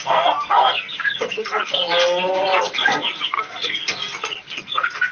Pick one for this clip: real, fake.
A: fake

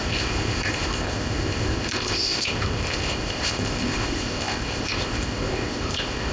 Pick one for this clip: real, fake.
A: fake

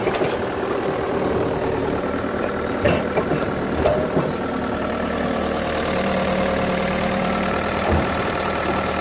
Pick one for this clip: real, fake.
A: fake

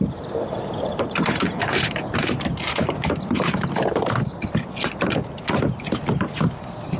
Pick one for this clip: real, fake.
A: fake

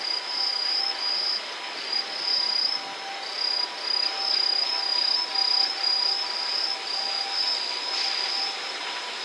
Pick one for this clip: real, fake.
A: real